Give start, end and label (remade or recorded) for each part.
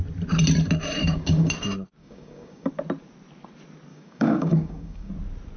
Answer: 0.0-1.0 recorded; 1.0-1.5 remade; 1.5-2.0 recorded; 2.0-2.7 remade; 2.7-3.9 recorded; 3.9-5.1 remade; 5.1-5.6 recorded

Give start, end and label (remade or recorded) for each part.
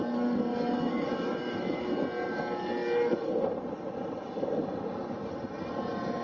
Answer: 0.0-0.5 recorded; 0.5-1.9 remade; 1.9-6.2 recorded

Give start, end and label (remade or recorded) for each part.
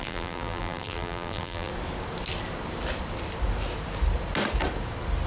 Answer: 0.0-1.7 remade; 1.7-5.3 recorded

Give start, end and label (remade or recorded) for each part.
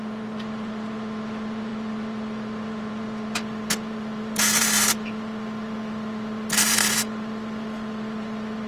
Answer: 0.0-8.7 recorded